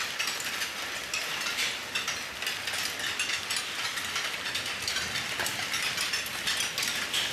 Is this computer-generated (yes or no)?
no